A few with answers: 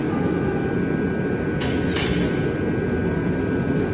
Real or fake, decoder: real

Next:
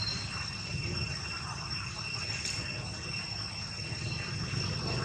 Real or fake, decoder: real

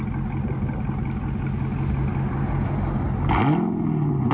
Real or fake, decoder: real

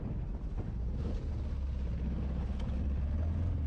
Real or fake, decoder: real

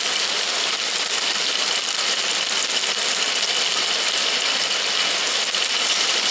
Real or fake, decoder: real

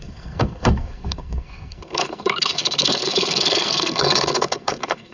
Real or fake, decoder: fake, codec, SNAC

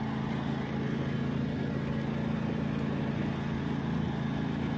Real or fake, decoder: real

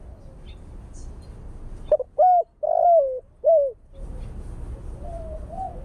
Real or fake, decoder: real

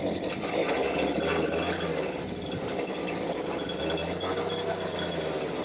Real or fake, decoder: real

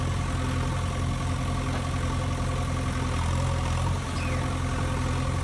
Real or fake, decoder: real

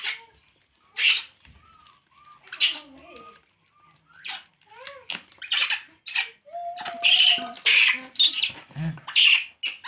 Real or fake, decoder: real